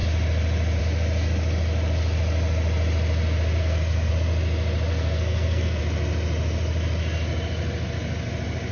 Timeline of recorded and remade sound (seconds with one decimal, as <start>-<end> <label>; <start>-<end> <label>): 0.0-3.6 recorded; 3.6-4.1 remade; 4.1-4.9 recorded; 4.9-5.8 remade; 5.8-8.7 recorded